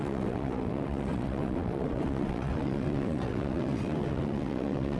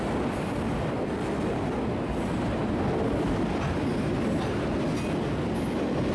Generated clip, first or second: first